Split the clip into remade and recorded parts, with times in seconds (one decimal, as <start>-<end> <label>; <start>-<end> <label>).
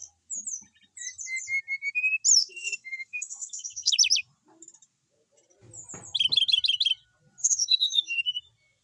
0.0-2.4 recorded; 2.4-3.9 remade; 3.9-7.4 recorded; 7.4-8.2 remade; 8.2-8.8 recorded